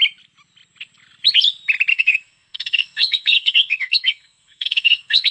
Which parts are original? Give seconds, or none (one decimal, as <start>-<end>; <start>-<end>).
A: 0.0-1.9